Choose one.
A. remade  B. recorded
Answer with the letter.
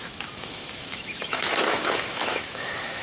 A